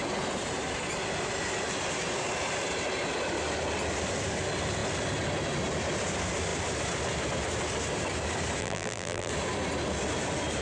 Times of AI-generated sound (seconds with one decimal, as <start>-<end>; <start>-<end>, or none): 8.6-9.3